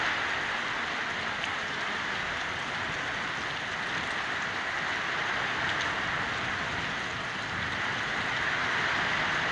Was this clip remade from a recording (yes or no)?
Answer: no